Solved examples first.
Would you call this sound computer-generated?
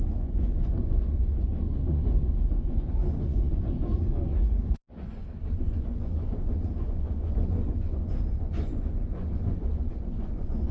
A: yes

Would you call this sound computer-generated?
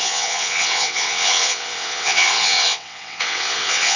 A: yes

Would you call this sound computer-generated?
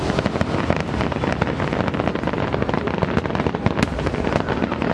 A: no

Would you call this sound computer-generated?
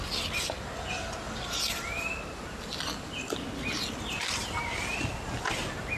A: no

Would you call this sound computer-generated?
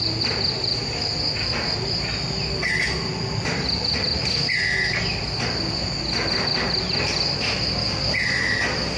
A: no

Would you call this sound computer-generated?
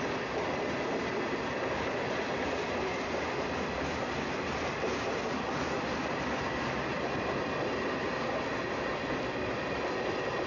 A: no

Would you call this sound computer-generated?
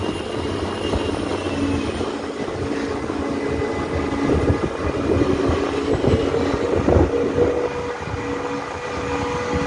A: no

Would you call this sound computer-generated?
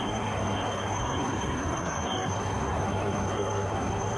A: yes